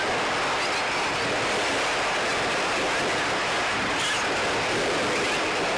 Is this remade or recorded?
recorded